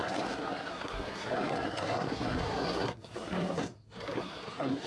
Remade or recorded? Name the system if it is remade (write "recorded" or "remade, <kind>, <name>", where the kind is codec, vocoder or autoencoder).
remade, codec, SNAC